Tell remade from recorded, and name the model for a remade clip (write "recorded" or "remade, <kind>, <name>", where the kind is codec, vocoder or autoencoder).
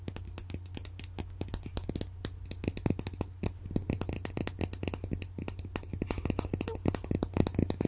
recorded